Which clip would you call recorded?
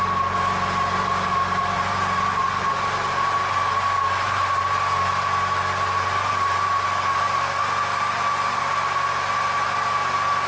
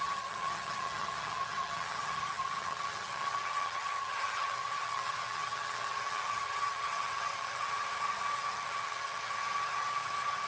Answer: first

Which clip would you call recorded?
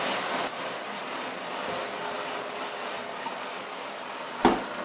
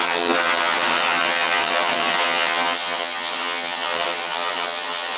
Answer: first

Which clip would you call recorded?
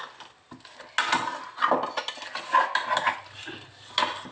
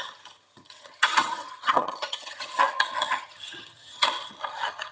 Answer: first